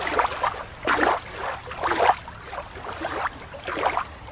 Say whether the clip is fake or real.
real